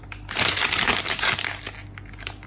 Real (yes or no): yes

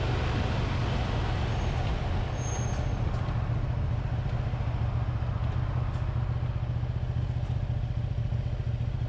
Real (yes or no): yes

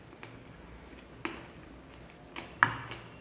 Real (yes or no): yes